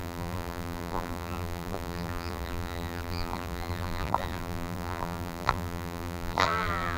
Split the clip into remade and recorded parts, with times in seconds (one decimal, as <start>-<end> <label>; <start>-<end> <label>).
0.0-7.0 remade